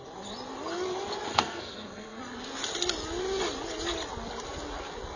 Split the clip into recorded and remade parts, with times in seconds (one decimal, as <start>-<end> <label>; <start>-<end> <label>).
0.0-1.3 recorded; 1.3-2.2 remade; 2.2-5.2 recorded